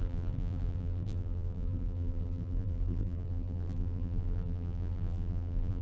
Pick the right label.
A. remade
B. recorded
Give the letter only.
A